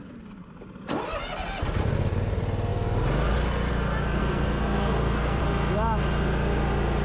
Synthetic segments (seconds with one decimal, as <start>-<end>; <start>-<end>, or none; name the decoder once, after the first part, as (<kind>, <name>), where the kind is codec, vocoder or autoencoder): 4.2-5.4 (codec, SNAC)